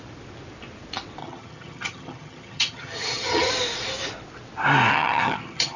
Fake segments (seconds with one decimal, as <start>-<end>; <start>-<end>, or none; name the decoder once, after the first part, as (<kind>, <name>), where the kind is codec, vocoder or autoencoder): 1.2-3.5 (vocoder, HiFi-GAN); 4.9-5.8